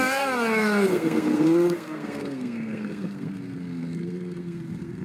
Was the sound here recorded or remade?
remade